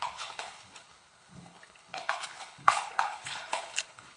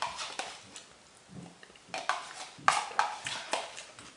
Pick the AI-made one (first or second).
first